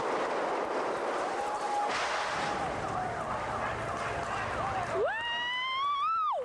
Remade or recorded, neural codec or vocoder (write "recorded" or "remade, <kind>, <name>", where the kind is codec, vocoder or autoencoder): recorded